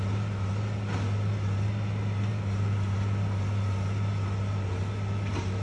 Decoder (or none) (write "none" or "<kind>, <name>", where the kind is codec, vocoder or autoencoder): none